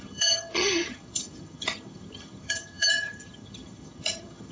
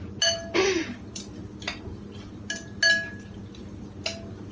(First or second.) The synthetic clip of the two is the first